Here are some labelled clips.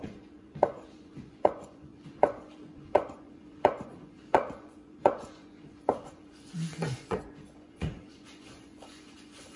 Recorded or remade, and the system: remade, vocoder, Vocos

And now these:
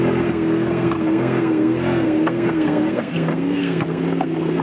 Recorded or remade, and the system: remade, codec, SNAC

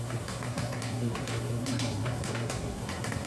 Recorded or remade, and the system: remade, codec, SNAC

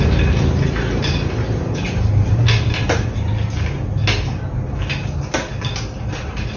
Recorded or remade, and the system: recorded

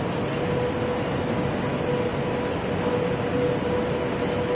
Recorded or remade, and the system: recorded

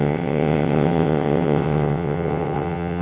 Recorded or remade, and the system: remade, vocoder, WaveNeXt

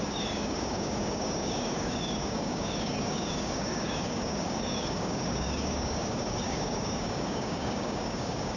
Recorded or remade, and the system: remade, codec, DAC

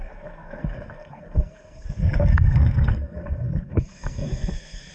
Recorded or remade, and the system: remade, codec, SNAC